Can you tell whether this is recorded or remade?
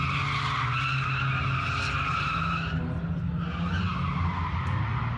recorded